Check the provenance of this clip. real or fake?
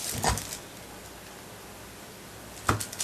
real